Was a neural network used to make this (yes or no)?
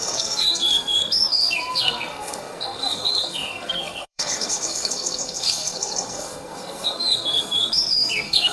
yes